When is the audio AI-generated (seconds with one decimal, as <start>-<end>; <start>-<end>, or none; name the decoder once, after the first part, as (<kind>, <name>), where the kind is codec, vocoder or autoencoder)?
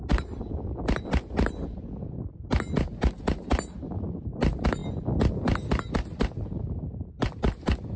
none